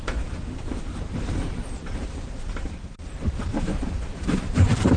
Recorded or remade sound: remade